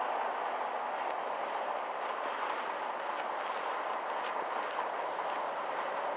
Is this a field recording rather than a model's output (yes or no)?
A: yes